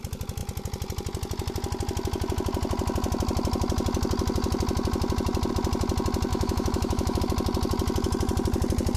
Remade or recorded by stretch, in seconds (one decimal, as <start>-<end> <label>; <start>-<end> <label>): 0.0-6.3 recorded; 6.3-7.2 remade; 7.2-9.0 recorded